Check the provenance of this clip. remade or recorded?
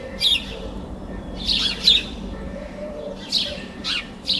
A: remade